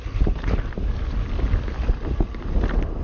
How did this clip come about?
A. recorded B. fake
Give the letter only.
A